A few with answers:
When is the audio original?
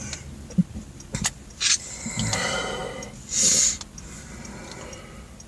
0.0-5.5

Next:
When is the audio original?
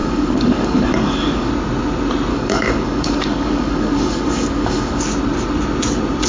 1.5-2.3; 5.0-6.3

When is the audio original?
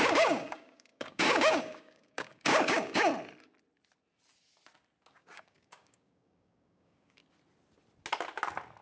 3.1-5.1; 7.2-8.8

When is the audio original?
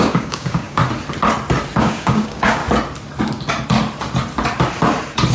0.8-1.8; 2.6-5.3